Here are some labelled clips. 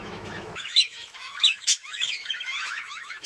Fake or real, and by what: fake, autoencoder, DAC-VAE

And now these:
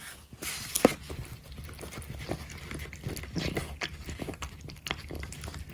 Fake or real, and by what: real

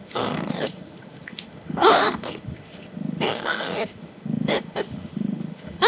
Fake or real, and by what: fake, autoencoder, DAC-VAE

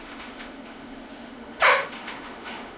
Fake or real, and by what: fake, autoencoder, DAC-VAE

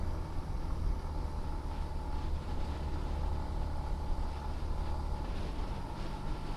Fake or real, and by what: real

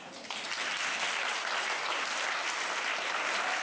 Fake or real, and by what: real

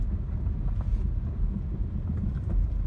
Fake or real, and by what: real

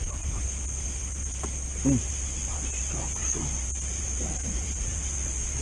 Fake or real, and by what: real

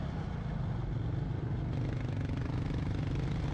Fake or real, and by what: real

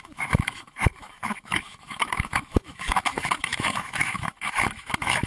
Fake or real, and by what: fake, autoencoder, DAC-VAE